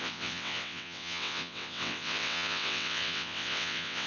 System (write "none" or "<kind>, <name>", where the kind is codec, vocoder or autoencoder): vocoder, WaveNeXt